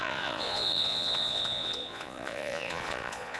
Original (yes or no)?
no